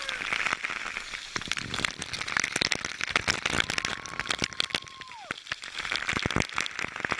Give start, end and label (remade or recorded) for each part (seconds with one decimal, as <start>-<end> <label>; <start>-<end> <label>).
0.0-7.2 recorded